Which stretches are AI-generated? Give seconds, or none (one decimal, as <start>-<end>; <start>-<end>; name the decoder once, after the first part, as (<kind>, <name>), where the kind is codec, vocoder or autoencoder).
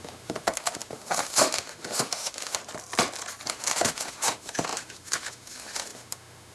0.0-2.6 (autoencoder, DAC-VAE); 3.5-6.5